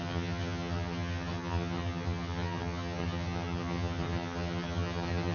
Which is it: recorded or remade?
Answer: remade